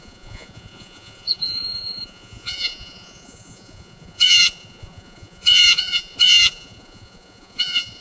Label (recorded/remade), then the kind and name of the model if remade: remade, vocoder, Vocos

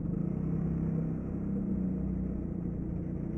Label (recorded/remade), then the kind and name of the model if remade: recorded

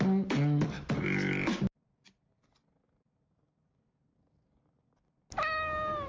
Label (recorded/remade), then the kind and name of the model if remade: recorded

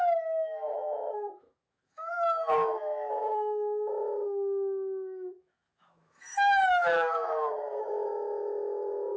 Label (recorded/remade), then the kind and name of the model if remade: remade, autoencoder, DAC-VAE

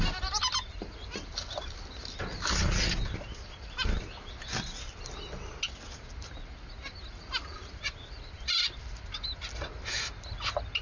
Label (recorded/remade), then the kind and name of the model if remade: recorded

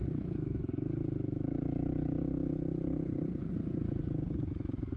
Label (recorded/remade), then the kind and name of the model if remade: remade, vocoder, BigVGAN v2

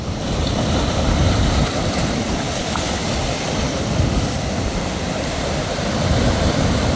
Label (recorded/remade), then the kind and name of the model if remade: remade, vocoder, BigVGAN v2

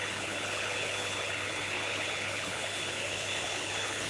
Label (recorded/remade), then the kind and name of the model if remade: remade, codec, HILCodec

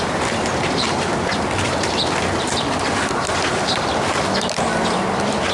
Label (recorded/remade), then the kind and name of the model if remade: remade, vocoder, BigVGAN v2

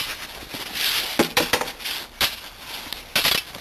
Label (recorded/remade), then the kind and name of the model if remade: recorded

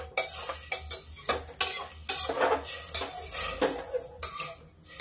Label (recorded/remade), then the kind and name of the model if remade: recorded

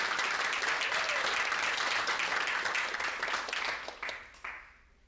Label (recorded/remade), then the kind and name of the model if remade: recorded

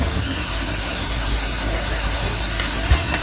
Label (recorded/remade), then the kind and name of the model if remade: remade, codec, SNAC